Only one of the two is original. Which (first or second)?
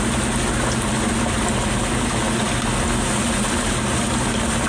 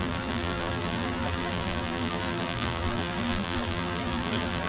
first